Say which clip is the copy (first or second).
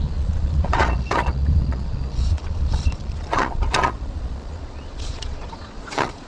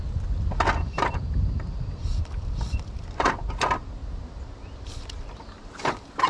first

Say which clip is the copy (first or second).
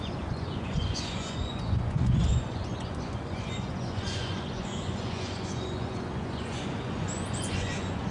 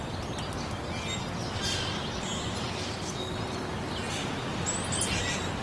first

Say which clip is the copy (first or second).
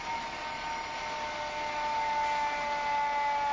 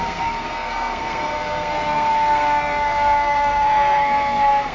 second